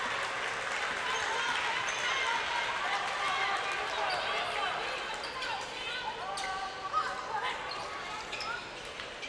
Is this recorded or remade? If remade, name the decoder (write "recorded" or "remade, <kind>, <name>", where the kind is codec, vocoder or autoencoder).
recorded